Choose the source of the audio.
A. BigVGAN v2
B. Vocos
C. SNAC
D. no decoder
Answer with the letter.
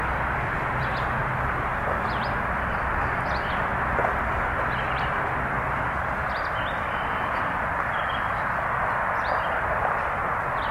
D